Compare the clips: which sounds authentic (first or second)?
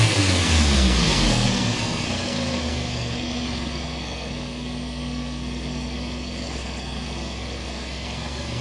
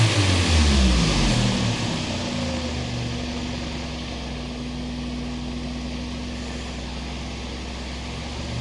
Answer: second